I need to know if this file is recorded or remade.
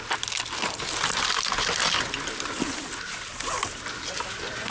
recorded